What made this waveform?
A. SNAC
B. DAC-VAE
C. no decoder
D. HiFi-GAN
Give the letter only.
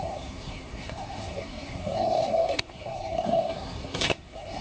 A